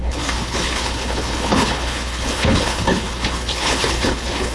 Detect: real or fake fake